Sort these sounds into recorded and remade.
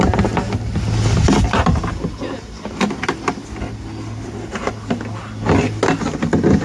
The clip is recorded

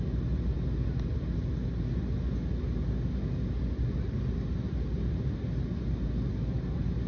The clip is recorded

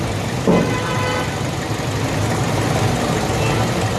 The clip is recorded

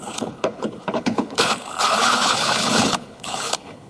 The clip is remade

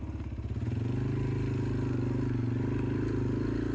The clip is recorded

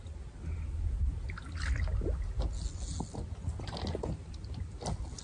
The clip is recorded